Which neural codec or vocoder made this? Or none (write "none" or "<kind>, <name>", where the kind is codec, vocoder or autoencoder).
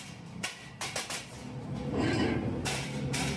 vocoder, BigVGAN v2